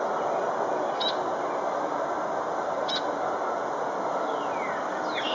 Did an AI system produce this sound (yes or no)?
no